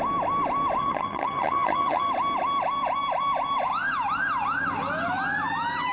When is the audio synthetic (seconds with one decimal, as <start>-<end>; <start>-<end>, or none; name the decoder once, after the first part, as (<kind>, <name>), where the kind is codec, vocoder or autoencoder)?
0.8-2.1 (vocoder, HiFi-GAN)